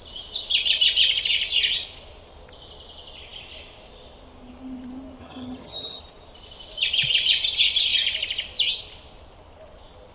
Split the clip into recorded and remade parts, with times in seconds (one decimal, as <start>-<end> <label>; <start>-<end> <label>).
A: 0.0-5.2 recorded; 5.2-6.0 remade; 6.0-10.1 recorded